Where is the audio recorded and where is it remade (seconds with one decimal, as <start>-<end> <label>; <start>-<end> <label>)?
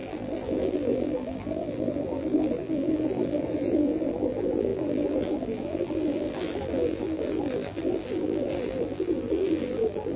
0.0-10.2 remade